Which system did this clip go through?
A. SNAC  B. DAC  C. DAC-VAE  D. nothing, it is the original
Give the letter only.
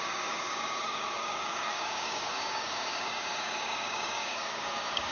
B